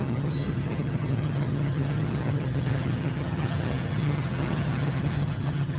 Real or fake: fake